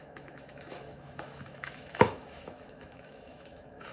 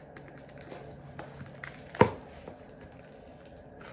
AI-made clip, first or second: first